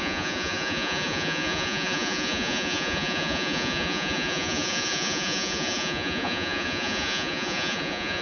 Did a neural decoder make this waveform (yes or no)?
yes